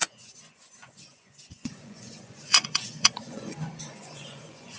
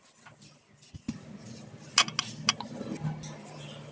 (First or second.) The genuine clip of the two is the second